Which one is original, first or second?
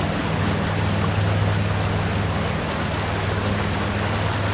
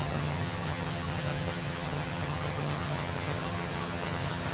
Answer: first